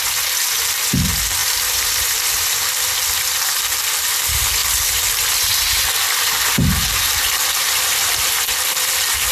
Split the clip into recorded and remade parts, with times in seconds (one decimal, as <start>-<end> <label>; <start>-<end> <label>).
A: 0.0-1.4 recorded; 1.4-3.2 remade; 3.2-4.6 recorded; 4.6-8.4 remade; 8.4-9.3 recorded